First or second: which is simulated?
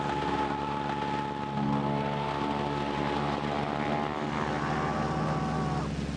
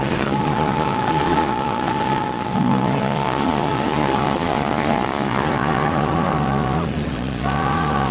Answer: second